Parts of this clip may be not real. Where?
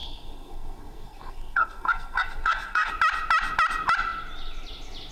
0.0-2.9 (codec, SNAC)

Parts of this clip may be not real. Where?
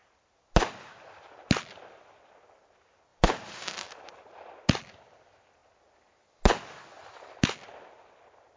3.1-4.4 (vocoder, BigVGAN v2)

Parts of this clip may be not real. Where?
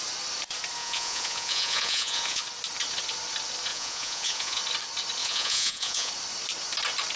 0.8-2.4 (vocoder, Vocos); 3.7-4.6; 5.2-6.1